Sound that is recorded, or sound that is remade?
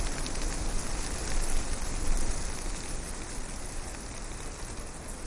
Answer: recorded